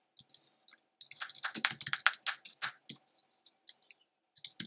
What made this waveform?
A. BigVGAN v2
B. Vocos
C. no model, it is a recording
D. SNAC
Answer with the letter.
C